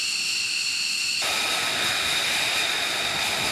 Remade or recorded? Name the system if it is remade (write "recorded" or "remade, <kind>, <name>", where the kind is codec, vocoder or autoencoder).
recorded